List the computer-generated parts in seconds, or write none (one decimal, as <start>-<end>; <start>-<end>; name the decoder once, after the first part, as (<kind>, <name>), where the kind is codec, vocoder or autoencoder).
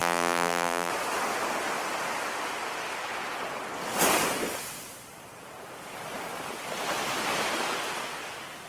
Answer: 0.0-0.9 (vocoder, BigVGAN v2)